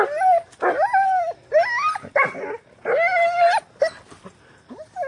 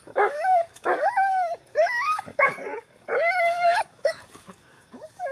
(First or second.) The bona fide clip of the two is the first